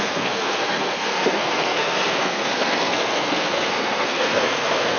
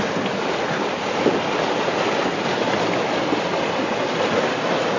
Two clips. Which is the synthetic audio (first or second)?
first